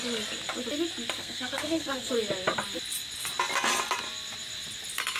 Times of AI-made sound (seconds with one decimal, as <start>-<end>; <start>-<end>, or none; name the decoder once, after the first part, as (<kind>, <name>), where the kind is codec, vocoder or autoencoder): 1.2-2.1 (codec, SNAC)